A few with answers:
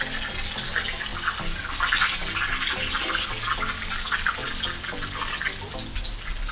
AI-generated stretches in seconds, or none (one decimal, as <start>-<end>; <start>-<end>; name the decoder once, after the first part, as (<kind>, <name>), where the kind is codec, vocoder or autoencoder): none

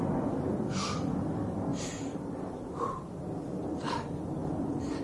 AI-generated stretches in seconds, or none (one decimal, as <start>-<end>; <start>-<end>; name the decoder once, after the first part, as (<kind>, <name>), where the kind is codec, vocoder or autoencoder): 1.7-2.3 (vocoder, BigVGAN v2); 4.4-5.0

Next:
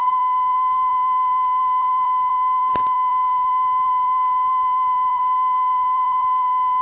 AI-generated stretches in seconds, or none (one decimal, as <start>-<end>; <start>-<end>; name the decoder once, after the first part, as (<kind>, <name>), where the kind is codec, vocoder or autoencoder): 0.0-6.8 (vocoder, BigVGAN v2)

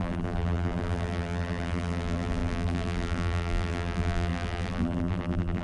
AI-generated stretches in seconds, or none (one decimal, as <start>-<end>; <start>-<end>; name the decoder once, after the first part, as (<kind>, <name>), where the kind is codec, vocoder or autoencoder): 0.0-5.6 (vocoder, BigVGAN v2)

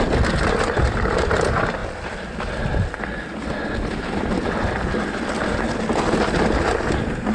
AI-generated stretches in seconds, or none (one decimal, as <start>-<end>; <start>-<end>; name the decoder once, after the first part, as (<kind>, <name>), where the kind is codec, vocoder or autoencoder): 1.8-5.8 (vocoder, BigVGAN v2)

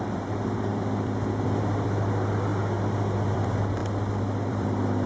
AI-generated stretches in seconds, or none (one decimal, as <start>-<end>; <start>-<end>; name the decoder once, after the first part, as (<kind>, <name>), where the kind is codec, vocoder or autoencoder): 0.0-2.5 (vocoder, BigVGAN v2); 3.3-3.8; 4.5-5.1